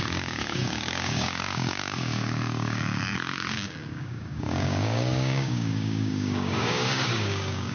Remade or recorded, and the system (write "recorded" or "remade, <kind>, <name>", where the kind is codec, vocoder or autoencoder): remade, codec, DAC